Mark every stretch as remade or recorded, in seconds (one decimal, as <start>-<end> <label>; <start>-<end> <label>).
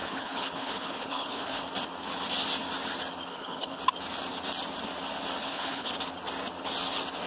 0.0-1.6 remade; 1.6-3.3 recorded; 3.3-3.8 remade; 3.8-5.4 recorded; 5.4-5.9 remade; 5.9-7.3 recorded